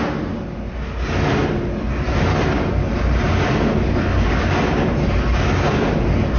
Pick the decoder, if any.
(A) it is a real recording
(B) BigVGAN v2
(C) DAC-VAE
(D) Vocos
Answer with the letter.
A